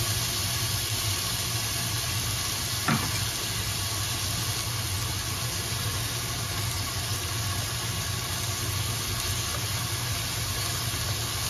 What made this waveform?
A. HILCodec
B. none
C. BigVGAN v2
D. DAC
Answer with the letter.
B